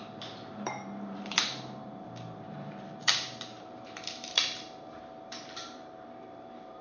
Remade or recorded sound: remade